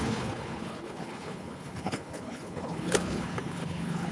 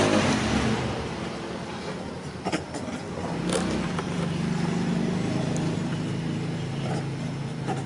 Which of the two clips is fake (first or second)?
first